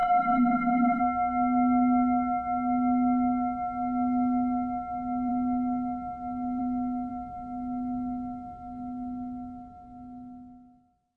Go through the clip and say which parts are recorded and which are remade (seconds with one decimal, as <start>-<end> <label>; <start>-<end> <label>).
0.0-1.0 remade; 1.0-11.2 recorded